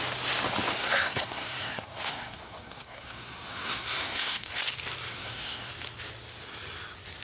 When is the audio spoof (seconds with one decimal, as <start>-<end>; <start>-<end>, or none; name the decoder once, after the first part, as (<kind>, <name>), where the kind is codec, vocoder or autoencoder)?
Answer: 0.8-4.6 (codec, SNAC); 5.1-5.7